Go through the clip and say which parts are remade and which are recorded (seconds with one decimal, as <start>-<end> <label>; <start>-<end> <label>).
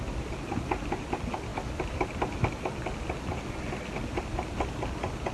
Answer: 0.0-5.3 recorded